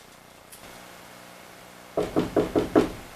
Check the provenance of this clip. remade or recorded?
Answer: recorded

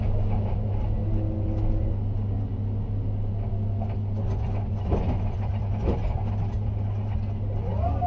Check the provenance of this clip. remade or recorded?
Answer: recorded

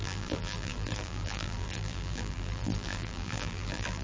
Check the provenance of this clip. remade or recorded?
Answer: remade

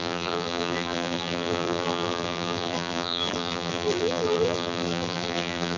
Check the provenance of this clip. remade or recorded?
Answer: remade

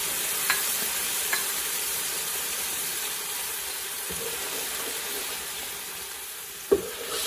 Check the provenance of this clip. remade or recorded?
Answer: remade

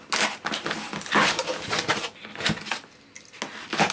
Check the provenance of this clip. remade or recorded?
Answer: recorded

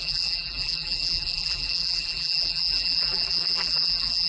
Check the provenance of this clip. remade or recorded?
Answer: remade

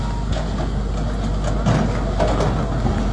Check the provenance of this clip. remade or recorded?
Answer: recorded